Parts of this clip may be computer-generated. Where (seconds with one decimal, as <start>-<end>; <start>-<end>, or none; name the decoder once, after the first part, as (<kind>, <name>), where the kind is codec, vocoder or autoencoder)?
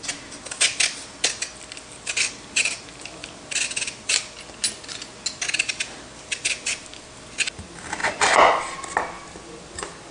8.0-8.6 (vocoder, Vocos)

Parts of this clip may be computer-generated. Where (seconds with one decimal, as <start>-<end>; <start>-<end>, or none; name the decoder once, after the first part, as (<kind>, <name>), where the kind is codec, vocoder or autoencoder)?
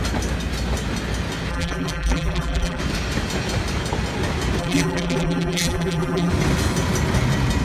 1.5-2.8 (vocoder, BigVGAN v2); 4.6-6.3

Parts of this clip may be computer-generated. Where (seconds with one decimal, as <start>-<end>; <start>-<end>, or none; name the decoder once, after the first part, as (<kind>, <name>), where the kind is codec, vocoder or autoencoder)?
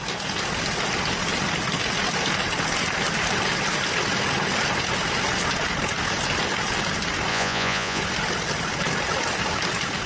7.3-8.0 (vocoder, Vocos)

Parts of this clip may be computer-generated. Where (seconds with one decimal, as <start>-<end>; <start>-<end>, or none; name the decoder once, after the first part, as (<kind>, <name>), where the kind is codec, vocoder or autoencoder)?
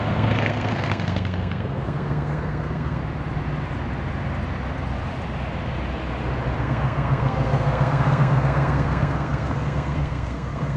0.0-3.0 (codec, SNAC); 6.6-10.8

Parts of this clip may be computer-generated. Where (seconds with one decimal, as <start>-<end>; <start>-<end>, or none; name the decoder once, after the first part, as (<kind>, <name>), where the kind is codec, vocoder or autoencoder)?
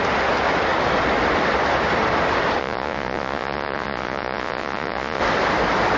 2.6-5.2 (vocoder, Vocos)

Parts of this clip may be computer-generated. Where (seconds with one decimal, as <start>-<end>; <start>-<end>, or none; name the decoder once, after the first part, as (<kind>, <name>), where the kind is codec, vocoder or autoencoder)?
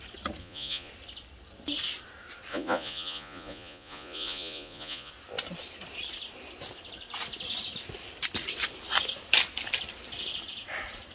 0.4-0.9 (vocoder, Vocos); 2.5-5.1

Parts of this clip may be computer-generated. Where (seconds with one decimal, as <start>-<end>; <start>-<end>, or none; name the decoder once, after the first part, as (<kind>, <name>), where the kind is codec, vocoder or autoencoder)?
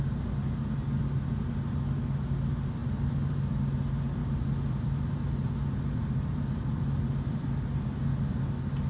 0.8-1.3 (vocoder, BigVGAN v2); 4.2-8.4